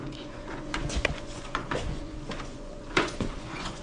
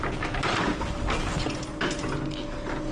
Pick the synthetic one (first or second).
first